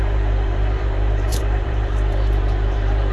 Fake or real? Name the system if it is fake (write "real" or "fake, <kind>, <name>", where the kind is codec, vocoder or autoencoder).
fake, vocoder, BigVGAN v2